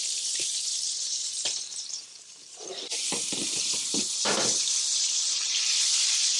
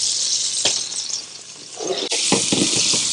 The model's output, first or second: first